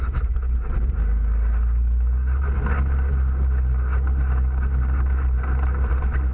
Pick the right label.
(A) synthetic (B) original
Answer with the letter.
B